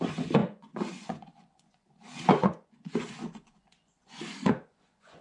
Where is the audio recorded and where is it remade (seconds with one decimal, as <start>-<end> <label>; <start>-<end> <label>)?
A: 0.0-5.2 remade